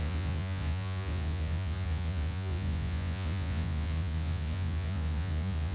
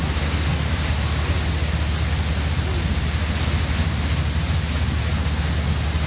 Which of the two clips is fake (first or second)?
first